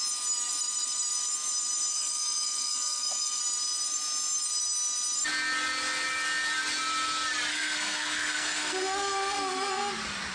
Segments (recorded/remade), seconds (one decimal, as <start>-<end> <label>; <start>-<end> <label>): 0.0-1.9 recorded; 1.9-3.4 remade; 3.4-7.5 recorded; 7.5-9.9 remade; 9.9-10.3 recorded